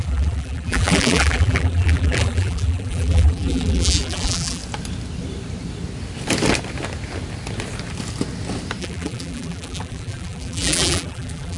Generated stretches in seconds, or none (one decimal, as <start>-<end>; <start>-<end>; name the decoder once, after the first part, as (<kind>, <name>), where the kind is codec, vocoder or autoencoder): 0.0-4.6 (vocoder, BigVGAN v2); 8.8-11.6